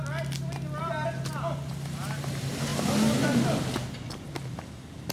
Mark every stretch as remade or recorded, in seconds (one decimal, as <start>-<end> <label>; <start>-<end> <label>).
0.0-5.1 recorded